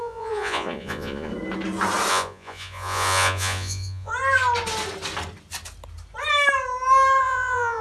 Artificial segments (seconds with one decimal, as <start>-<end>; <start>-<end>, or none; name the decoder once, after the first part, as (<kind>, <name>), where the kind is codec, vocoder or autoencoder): 0.0-1.3 (vocoder, Vocos); 2.1-4.1; 7.2-7.8